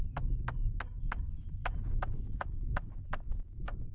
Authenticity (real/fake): real